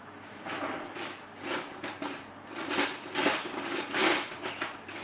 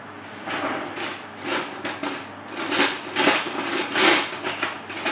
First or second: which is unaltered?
second